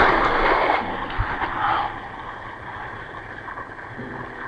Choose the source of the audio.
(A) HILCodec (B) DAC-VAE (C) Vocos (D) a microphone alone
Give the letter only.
D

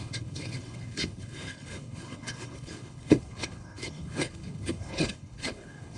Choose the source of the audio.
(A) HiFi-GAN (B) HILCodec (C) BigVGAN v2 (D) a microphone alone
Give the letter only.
B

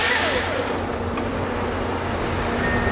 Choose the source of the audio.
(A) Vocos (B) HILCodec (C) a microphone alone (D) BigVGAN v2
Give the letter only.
C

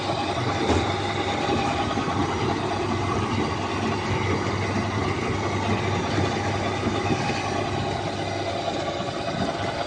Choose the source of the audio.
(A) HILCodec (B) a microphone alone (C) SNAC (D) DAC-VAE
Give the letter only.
B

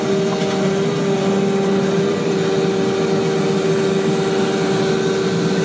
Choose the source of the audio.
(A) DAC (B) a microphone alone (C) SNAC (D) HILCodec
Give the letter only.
B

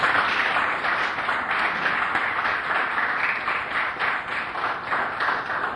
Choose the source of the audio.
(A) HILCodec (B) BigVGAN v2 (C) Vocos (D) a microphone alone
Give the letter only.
D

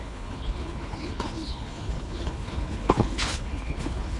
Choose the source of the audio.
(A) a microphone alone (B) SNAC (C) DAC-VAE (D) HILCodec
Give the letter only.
D